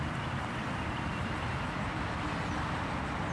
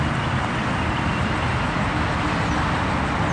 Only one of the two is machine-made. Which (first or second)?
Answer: first